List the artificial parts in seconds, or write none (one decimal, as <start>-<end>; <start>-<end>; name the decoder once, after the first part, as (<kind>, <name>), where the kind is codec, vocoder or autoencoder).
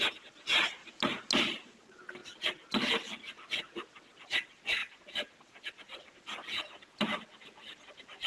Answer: none